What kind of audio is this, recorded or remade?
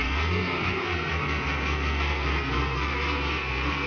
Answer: remade